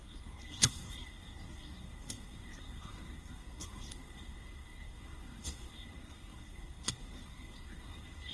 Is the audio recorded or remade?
remade